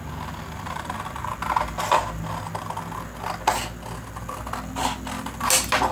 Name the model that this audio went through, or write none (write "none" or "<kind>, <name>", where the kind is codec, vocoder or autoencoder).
none